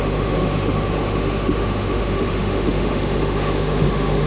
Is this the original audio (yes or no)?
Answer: no